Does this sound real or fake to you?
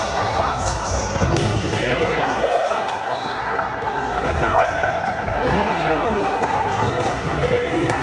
fake